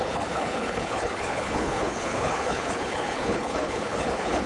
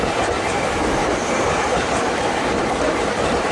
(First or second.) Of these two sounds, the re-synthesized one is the first